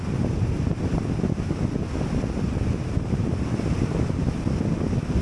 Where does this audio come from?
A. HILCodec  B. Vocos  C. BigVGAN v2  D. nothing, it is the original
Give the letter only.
D